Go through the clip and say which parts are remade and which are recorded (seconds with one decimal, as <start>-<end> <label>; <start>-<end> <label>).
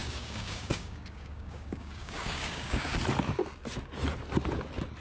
0.0-3.0 remade; 3.0-5.0 recorded